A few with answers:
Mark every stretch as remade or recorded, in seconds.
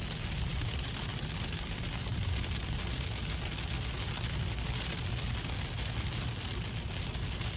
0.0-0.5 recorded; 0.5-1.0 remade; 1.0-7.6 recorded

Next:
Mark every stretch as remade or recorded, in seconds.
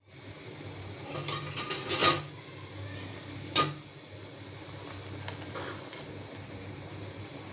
0.0-7.5 recorded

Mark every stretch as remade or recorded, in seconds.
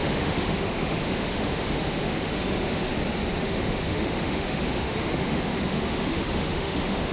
0.0-2.9 remade; 2.9-3.4 recorded; 3.4-7.1 remade